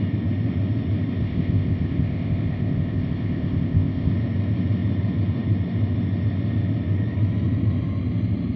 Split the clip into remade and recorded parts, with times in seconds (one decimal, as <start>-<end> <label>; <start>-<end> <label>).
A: 0.0-1.2 recorded; 1.2-4.1 remade; 4.1-8.6 recorded